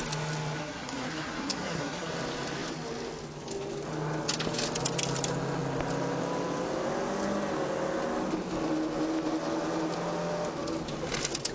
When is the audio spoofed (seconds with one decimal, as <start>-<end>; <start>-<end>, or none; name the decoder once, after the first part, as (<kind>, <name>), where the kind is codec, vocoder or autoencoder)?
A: 0.6-2.1 (codec, SNAC)